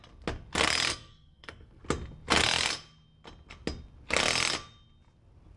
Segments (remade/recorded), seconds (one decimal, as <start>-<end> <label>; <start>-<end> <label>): 0.0-0.9 recorded; 0.9-1.8 remade; 1.8-5.6 recorded